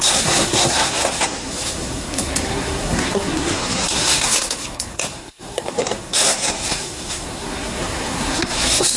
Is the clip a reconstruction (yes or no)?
yes